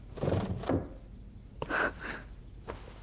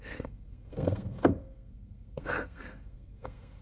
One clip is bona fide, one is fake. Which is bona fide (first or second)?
first